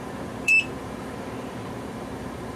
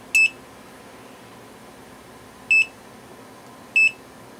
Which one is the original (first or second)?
second